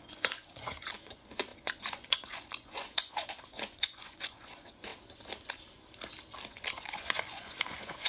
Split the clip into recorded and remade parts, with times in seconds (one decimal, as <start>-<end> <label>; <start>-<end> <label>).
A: 0.0-4.9 remade; 4.9-6.5 recorded; 6.5-8.1 remade